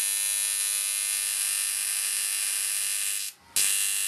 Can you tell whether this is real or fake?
real